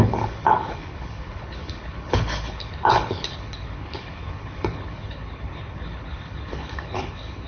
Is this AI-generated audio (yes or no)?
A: yes